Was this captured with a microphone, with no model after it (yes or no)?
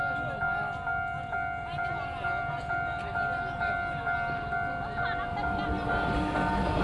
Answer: yes